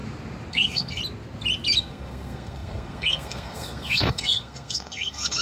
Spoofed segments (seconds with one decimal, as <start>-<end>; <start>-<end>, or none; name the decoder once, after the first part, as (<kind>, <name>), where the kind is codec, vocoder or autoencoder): 0.5-1.0 (codec, SNAC); 1.8-5.4